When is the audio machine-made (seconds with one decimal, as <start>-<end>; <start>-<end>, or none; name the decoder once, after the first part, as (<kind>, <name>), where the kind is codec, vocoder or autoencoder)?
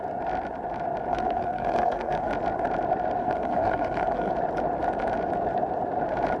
1.1-2.3 (codec, SNAC); 3.2-4.3